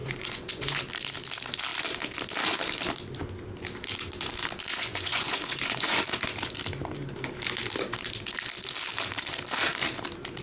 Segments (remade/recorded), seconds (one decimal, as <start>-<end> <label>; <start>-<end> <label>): 0.0-0.8 remade; 0.8-4.7 recorded; 4.7-6.0 remade; 6.0-10.4 recorded